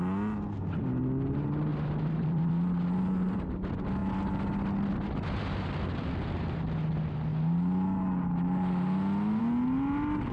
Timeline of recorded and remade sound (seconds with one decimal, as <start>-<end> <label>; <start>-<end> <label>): 0.0-1.7 recorded; 1.7-2.5 remade; 2.5-10.3 recorded